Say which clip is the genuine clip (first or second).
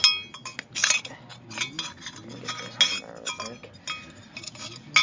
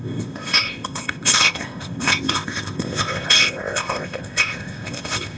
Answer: first